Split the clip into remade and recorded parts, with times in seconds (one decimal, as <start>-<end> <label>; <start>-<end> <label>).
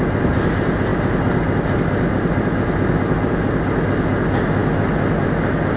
0.0-5.8 recorded